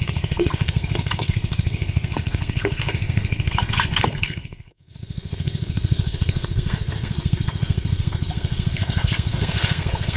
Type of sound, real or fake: fake